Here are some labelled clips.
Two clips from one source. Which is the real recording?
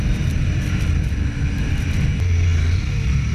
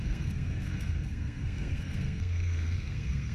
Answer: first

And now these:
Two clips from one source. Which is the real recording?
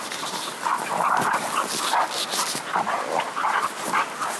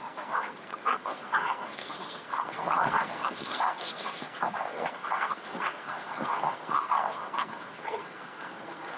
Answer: first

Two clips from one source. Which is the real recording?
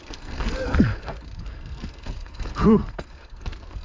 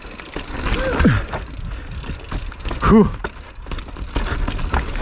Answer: second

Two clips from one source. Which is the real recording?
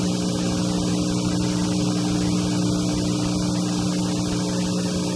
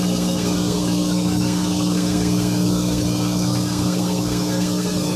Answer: first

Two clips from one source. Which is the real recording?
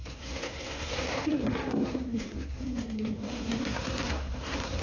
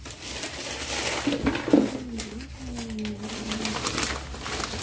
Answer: second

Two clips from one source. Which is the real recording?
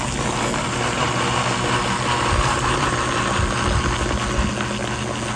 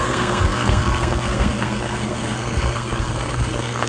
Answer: first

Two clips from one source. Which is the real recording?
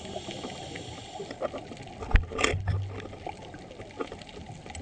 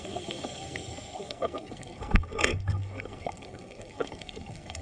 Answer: first